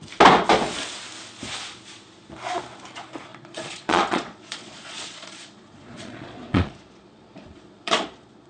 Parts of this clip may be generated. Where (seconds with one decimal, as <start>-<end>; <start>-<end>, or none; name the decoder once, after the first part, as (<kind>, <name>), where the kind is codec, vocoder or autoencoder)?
3.3-8.5 (vocoder, Vocos)